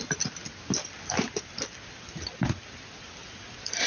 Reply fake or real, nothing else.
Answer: real